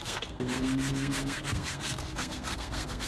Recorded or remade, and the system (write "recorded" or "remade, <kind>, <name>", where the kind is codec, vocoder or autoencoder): remade, codec, SNAC